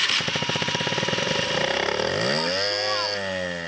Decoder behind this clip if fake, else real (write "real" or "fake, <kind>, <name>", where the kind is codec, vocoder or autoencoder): real